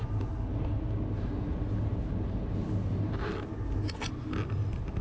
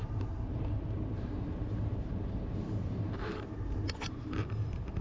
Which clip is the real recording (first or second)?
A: first